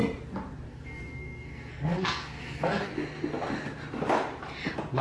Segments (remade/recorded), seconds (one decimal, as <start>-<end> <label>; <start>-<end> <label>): 0.0-0.7 recorded; 0.7-2.9 remade; 2.9-5.0 recorded